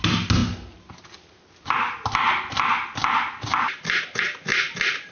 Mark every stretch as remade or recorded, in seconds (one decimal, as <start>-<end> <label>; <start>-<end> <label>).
0.0-5.1 recorded